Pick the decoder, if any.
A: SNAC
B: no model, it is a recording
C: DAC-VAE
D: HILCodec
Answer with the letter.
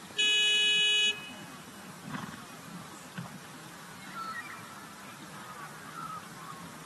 B